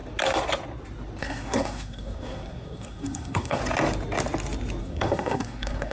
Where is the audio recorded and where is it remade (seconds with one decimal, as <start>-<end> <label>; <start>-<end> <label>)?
0.0-1.2 recorded; 1.2-3.6 remade; 3.6-4.8 recorded; 4.8-5.9 remade